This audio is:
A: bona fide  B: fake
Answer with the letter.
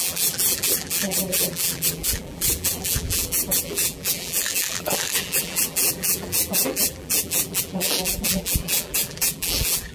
B